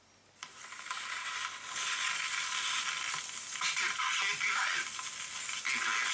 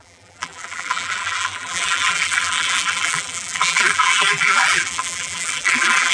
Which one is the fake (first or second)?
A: second